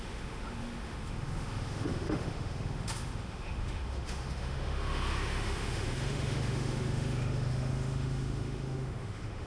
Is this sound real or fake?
fake